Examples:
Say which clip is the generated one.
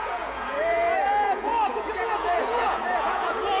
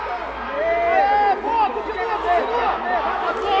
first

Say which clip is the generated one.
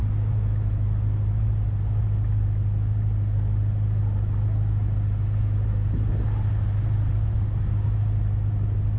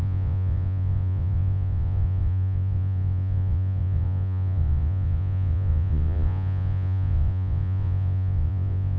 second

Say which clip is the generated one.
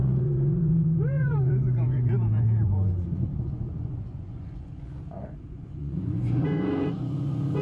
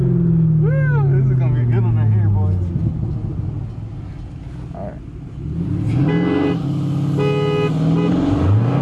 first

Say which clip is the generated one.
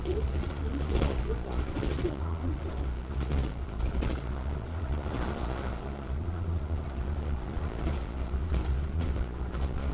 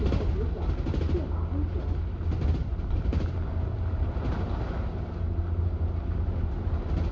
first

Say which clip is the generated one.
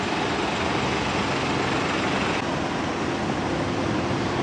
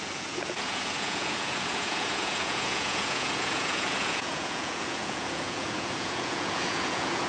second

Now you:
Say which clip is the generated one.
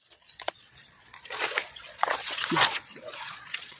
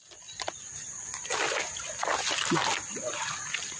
first